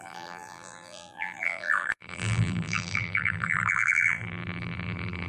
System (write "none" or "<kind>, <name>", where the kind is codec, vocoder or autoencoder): vocoder, BigVGAN v2